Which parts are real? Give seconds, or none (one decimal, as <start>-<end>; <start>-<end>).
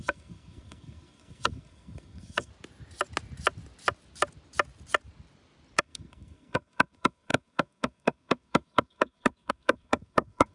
2.5-5.8